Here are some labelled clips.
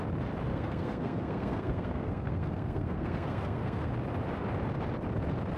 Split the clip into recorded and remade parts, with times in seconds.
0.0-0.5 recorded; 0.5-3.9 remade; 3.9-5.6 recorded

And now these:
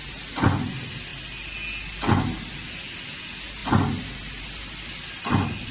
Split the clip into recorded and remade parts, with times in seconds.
0.0-5.7 recorded

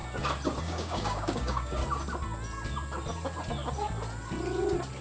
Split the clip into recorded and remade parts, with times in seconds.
0.0-0.6 recorded; 0.6-1.8 remade; 1.8-5.0 recorded

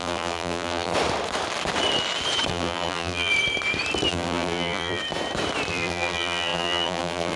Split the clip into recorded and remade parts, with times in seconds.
0.0-0.9 remade; 0.9-2.5 recorded; 2.5-3.3 remade; 3.3-4.1 recorded; 4.1-5.0 remade; 5.0-5.7 recorded; 5.7-7.4 remade

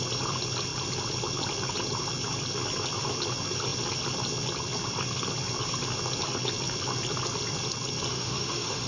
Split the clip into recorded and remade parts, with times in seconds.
0.0-8.1 recorded; 8.1-8.9 remade